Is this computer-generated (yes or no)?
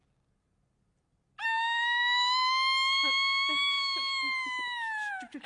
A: no